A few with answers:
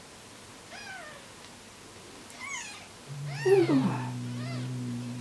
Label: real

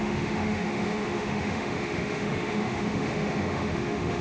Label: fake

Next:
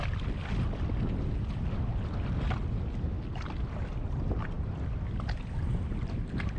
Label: real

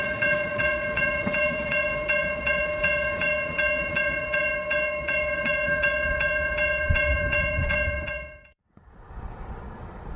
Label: fake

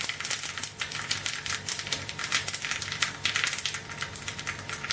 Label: fake